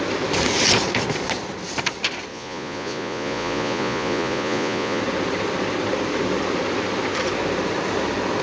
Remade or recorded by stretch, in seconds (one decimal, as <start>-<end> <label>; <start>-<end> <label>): 0.0-2.3 recorded; 2.3-5.0 remade; 5.0-8.4 recorded

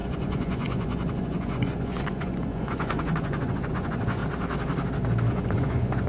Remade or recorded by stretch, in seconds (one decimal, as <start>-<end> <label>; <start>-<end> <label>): 0.0-4.2 remade; 4.2-5.3 recorded; 5.3-6.1 remade

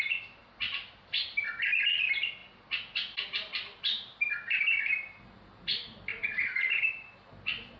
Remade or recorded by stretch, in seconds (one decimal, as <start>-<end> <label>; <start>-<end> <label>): 0.0-6.1 recorded; 6.1-6.8 remade; 6.8-7.8 recorded

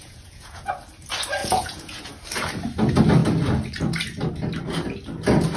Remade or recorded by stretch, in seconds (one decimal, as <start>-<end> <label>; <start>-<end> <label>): 0.0-0.7 remade; 0.7-1.4 recorded; 1.4-2.1 remade; 2.1-5.6 recorded